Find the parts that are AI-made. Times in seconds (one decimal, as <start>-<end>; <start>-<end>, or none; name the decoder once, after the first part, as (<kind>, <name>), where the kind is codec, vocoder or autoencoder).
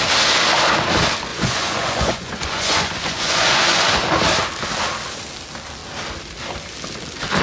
1.3-3.9 (vocoder, Vocos)